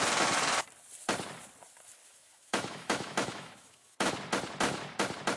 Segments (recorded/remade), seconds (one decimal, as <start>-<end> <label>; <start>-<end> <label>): 0.0-2.0 recorded; 2.0-4.1 remade; 4.1-5.4 recorded